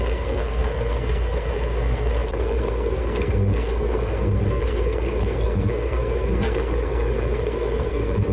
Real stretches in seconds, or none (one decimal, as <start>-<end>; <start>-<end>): none